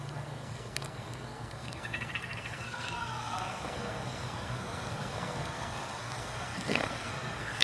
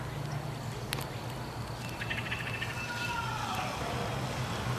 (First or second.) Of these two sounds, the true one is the second